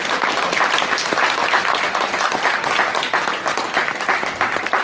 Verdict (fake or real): real